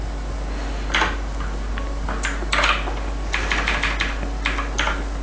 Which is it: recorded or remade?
recorded